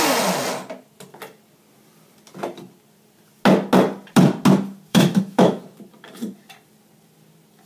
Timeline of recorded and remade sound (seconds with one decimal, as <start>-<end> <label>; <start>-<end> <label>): 0.0-4.9 recorded; 4.9-5.6 remade; 5.6-7.7 recorded